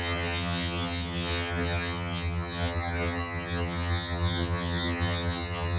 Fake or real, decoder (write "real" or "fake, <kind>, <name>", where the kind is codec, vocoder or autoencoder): fake, vocoder, HiFi-GAN